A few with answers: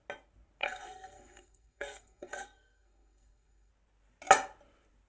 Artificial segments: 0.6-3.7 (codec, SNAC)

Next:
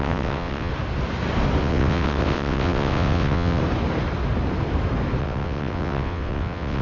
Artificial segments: 0.0-0.7 (vocoder, WaveNeXt); 1.6-3.6; 5.2-6.8

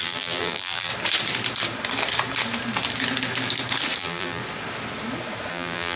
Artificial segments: 0.0-0.9 (vocoder, BigVGAN v2); 4.0-4.4; 5.5-6.0

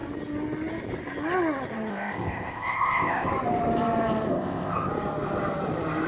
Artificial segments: 1.9-3.3 (codec, ZipCodec); 4.3-4.9